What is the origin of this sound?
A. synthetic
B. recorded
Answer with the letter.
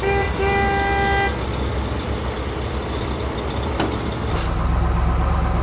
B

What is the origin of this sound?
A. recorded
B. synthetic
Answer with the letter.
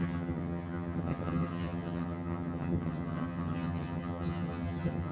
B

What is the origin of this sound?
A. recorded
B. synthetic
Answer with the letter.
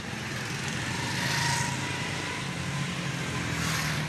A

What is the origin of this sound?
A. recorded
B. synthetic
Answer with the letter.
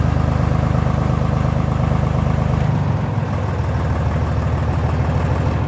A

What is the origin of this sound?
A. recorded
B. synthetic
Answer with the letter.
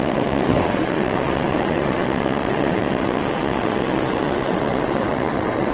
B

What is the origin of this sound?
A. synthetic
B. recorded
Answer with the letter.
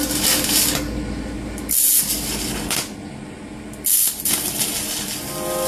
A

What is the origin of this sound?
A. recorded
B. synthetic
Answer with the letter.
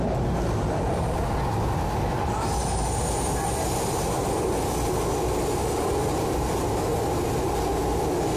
A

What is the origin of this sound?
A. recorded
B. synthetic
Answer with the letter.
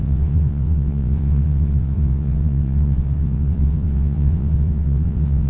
B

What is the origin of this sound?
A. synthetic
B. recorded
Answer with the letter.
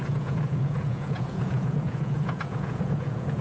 A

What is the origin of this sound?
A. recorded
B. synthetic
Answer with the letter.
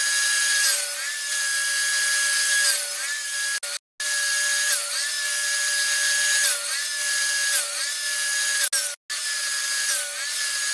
A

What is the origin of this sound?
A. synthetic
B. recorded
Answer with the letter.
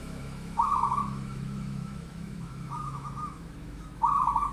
A